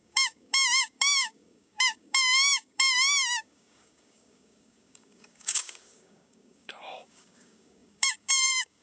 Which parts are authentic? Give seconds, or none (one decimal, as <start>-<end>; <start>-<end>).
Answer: none